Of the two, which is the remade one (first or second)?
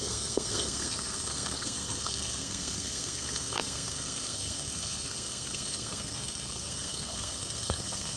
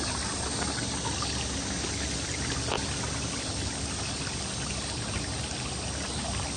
first